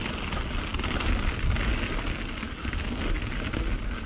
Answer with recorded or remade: recorded